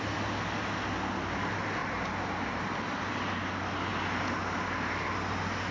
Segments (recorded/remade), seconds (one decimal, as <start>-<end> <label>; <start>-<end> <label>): 0.0-5.7 recorded

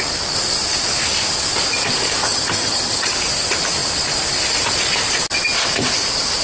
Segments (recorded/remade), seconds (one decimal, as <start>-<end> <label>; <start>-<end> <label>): 0.0-2.2 recorded; 2.2-3.1 remade; 3.1-6.4 recorded

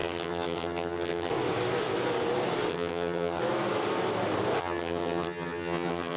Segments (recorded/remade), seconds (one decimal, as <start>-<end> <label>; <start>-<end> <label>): 0.0-1.3 remade; 1.3-2.7 recorded; 2.7-3.4 remade; 3.4-4.6 recorded; 4.6-6.2 remade

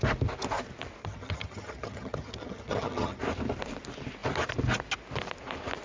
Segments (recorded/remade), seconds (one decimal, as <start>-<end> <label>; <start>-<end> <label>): 0.0-1.0 recorded; 1.0-3.2 remade; 3.2-5.8 recorded

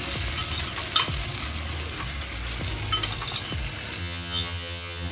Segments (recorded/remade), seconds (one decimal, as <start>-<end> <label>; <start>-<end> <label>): 0.0-4.0 recorded; 4.0-5.1 remade

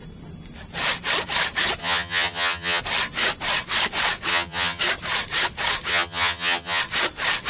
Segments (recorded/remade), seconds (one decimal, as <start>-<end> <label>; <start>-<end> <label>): 0.0-1.8 recorded; 1.8-2.8 remade; 2.8-4.3 recorded; 4.3-4.8 remade; 4.8-5.9 recorded; 5.9-6.8 remade; 6.8-7.5 recorded

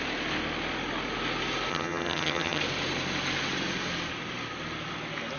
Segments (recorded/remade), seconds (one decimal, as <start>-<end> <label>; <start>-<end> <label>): 0.0-1.7 recorded; 1.7-2.6 remade; 2.6-5.4 recorded

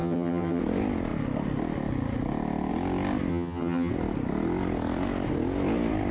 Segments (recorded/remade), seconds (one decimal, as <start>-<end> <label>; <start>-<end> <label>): 0.0-0.6 remade; 0.6-3.3 recorded; 3.3-3.9 remade; 3.9-6.1 recorded